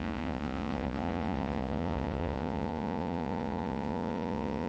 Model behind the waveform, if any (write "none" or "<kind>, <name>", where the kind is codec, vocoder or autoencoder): vocoder, Vocos